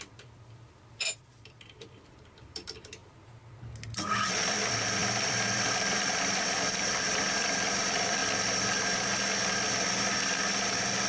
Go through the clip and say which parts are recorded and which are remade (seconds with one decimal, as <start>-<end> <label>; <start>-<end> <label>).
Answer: 0.0-3.0 remade; 3.0-4.1 recorded; 4.1-8.2 remade; 8.2-11.1 recorded